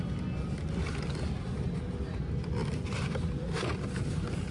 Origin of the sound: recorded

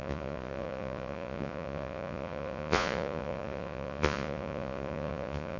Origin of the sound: remade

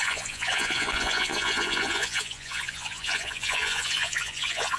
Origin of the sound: remade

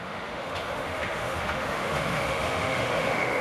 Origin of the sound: remade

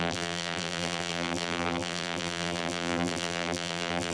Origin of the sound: remade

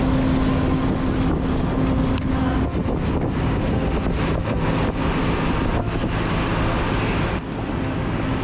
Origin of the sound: recorded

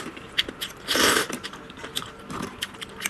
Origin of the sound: recorded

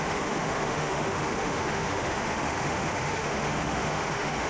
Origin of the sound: remade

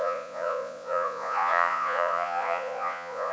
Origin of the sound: remade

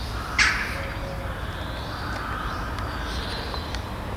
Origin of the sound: recorded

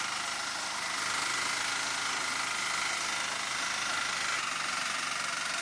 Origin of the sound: recorded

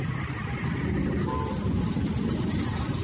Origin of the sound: recorded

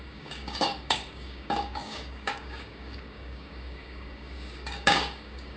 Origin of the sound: remade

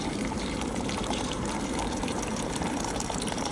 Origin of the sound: remade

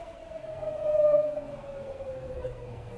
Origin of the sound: remade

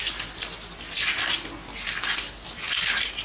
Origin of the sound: recorded